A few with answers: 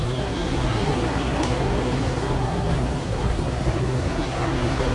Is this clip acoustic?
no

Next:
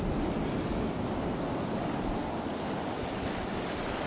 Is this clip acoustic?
yes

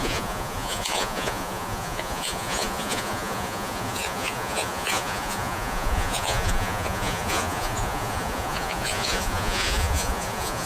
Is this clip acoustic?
no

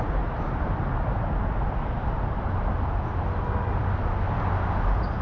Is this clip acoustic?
yes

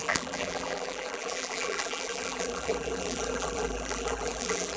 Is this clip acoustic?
no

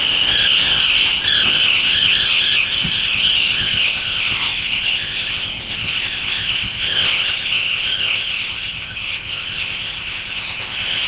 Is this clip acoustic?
no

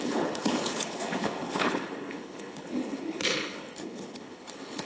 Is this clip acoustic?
no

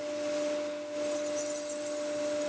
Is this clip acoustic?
yes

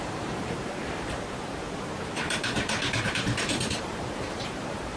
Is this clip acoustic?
no